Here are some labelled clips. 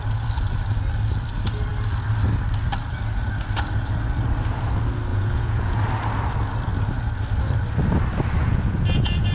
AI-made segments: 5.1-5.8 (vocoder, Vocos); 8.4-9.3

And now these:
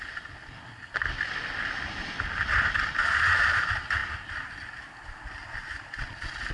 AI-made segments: none

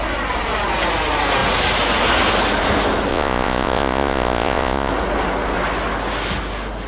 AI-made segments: 3.1-4.9 (vocoder, Vocos)